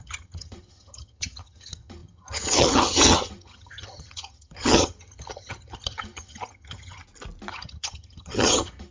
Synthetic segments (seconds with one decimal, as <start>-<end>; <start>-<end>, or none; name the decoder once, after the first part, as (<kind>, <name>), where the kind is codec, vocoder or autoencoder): 0.0-7.0 (vocoder, HiFi-GAN); 7.5-8.9